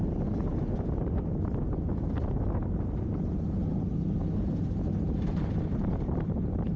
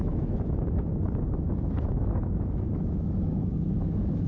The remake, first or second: second